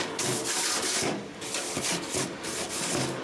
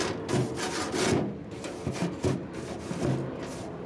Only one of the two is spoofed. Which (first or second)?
first